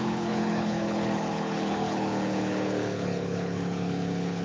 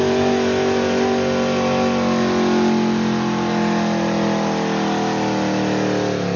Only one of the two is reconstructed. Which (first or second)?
first